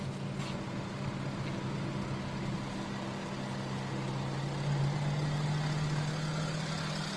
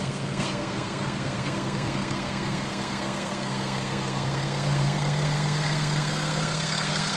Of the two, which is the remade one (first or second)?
second